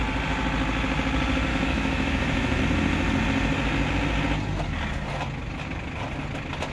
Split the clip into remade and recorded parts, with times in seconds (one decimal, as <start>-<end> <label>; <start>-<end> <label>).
0.0-1.5 recorded; 1.5-2.6 remade; 2.6-6.7 recorded